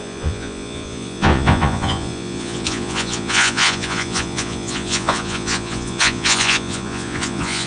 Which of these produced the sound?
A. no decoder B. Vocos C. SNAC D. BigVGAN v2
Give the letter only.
B